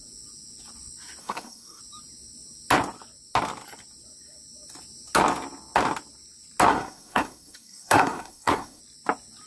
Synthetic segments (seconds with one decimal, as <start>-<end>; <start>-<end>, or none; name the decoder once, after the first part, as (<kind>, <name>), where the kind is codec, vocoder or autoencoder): 1.2-1.8 (codec, SNAC); 6.7-8.8